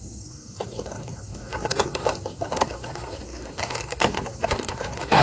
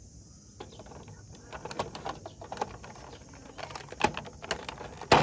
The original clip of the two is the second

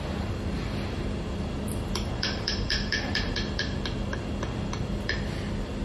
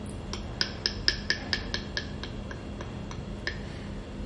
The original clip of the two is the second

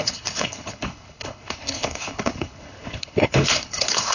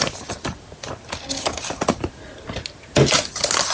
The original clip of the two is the second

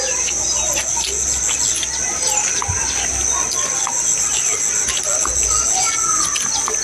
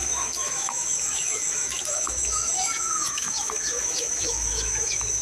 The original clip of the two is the first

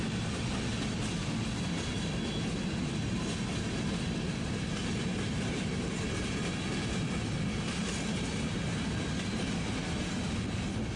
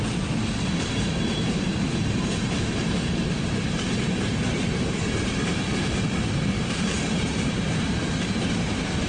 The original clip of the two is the first